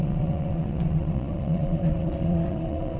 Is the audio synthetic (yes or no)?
yes